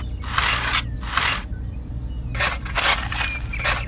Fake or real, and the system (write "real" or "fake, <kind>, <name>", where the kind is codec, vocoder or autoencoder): real